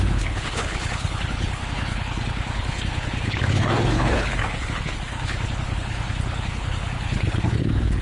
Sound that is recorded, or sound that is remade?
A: remade